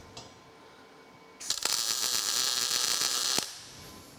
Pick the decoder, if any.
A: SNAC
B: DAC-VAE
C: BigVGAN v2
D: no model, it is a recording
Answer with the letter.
D